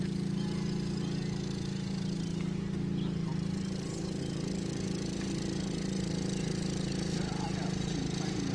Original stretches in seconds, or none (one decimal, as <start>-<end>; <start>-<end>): 0.0-8.5